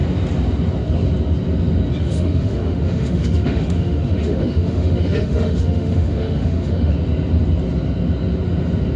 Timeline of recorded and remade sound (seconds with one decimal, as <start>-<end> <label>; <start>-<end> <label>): 0.0-2.0 recorded; 2.0-6.9 remade; 6.9-9.0 recorded